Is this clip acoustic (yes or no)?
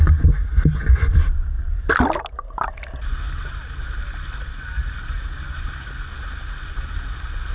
yes